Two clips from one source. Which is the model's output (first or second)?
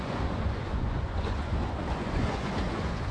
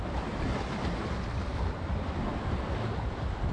first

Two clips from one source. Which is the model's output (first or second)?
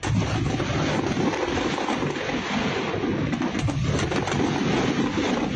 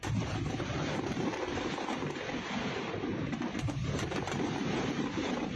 second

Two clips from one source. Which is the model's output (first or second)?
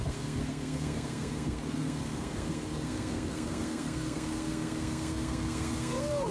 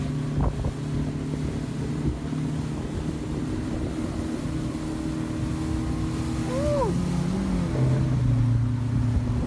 first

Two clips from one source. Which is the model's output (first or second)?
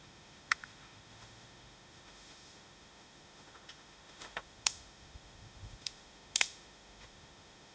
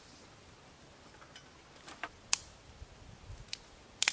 first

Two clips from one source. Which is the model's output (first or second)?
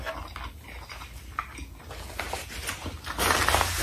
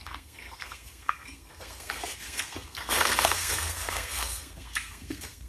second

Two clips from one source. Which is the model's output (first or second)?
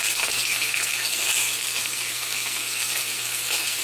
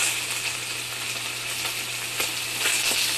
first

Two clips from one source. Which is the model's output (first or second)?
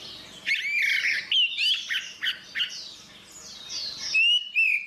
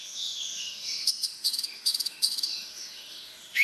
second